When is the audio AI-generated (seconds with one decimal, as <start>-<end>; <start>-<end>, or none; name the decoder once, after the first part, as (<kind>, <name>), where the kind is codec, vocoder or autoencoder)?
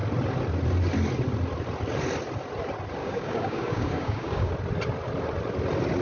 3.0-4.5 (codec, DAC)